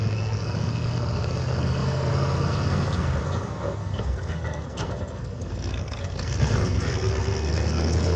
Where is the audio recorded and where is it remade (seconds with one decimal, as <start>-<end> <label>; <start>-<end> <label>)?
0.0-8.2 remade